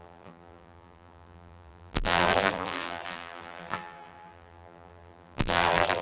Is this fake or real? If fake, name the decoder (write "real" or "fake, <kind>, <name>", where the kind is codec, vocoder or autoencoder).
fake, vocoder, BigVGAN v2